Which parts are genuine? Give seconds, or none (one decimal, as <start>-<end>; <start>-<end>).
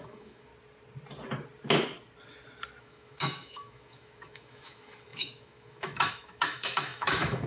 0.5-2.8